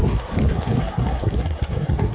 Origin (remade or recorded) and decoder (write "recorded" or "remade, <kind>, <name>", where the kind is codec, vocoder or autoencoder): remade, codec, SNAC